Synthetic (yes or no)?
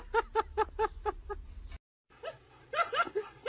no